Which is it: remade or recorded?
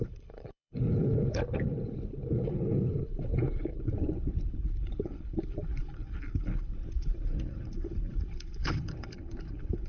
remade